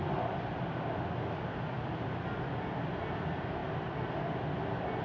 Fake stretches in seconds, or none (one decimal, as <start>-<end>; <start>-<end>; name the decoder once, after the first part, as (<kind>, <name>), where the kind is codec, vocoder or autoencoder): none